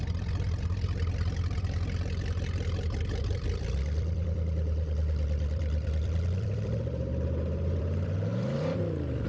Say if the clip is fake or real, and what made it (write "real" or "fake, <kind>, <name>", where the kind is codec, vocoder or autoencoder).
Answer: fake, vocoder, BigVGAN v2